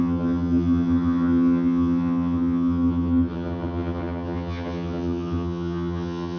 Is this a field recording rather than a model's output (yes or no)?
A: no